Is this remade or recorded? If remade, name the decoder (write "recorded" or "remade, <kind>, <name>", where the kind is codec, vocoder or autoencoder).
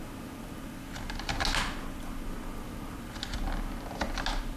recorded